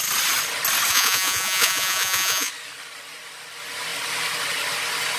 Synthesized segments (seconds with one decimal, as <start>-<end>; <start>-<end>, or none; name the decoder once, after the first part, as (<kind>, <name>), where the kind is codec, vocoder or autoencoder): 0.9-2.5 (vocoder, Vocos)